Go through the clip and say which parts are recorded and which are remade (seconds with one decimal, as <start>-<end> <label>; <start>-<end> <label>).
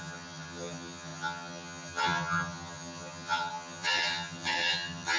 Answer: 0.0-5.2 remade